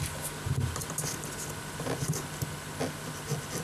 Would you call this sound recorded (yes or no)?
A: yes